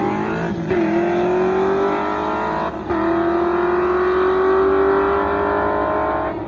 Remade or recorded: recorded